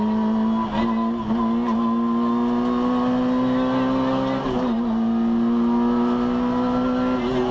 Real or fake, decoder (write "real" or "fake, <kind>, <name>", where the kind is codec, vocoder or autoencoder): real